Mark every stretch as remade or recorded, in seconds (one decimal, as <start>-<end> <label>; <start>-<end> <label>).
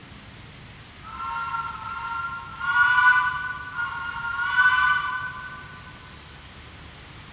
0.0-7.3 recorded